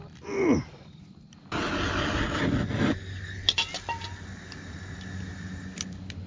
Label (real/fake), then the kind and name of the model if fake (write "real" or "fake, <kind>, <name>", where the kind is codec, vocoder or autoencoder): real